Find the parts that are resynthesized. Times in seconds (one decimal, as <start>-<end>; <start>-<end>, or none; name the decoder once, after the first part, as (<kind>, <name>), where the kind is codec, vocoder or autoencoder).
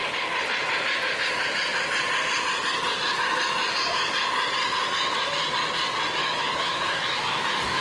6.2-7.8 (autoencoder, DAC-VAE)